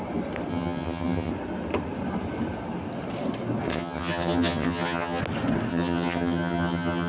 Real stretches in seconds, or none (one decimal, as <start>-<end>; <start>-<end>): 0.0-0.5; 1.3-3.7; 5.2-5.7